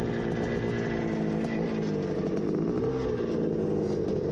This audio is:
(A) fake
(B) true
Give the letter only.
B